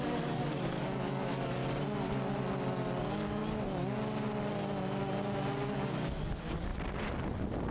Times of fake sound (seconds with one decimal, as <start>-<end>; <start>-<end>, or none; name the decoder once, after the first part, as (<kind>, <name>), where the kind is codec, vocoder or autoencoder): 0.0-1.6 (codec, DAC); 3.0-3.4; 5.7-6.7